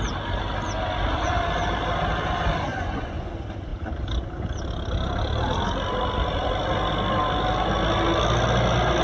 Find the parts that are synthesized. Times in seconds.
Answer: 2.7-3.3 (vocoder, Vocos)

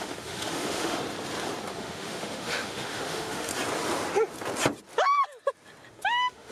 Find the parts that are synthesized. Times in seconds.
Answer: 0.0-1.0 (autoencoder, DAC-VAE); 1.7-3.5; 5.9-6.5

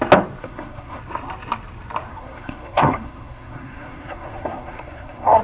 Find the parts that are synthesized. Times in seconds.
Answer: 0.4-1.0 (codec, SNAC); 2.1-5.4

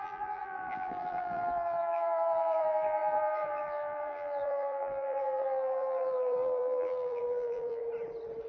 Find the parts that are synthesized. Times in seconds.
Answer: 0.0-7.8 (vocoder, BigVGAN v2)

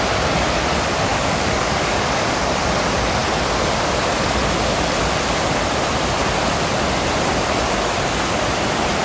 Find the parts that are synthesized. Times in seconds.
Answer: 1.1-2.4 (codec, DAC)

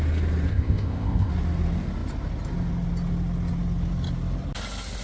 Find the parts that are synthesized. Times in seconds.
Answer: 0.5-1.3 (codec, ZipCodec)

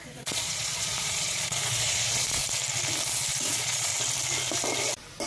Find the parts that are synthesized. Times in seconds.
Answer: 0.0-2.4 (vocoder, Vocos); 3.4-3.9